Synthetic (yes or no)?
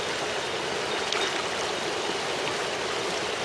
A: no